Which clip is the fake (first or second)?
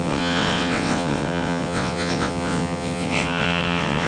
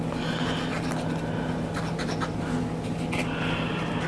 first